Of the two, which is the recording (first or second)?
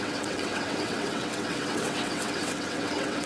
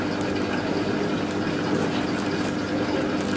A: second